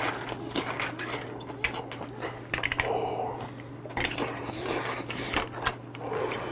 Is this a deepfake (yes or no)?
no